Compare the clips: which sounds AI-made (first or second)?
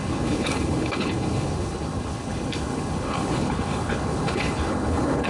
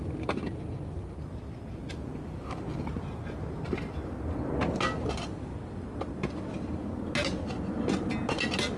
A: first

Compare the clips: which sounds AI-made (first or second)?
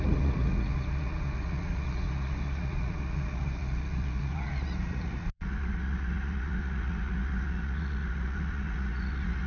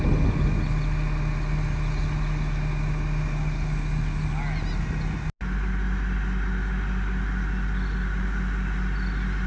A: first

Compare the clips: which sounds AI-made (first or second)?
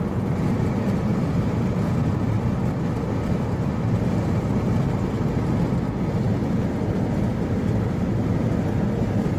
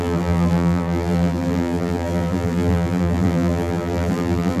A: second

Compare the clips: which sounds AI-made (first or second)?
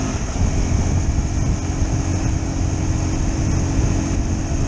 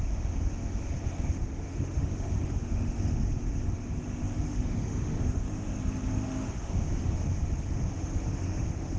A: second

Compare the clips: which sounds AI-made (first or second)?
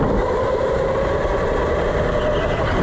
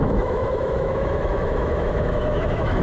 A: second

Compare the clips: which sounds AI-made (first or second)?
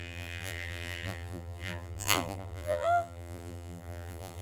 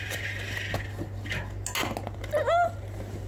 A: first